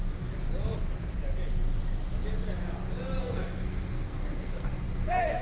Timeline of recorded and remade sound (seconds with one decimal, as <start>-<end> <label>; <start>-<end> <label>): 0.0-3.2 recorded; 3.2-5.4 remade